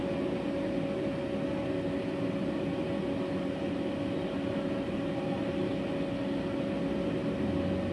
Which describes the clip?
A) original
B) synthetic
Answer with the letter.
A